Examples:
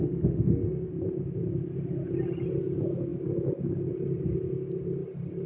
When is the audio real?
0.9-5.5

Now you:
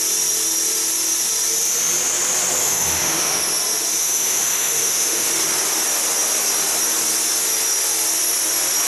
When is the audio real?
0.0-2.6; 3.4-4.0; 5.3-8.9

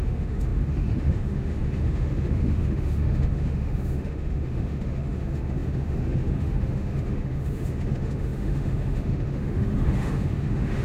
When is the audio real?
none

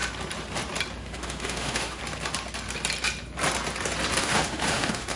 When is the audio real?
0.0-1.0; 2.0-4.2

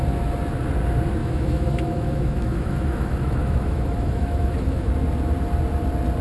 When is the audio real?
0.0-1.2; 4.9-6.2

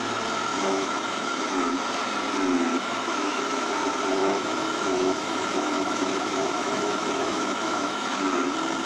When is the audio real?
0.0-0.5; 1.5-2.7; 3.7-4.2; 8.2-8.9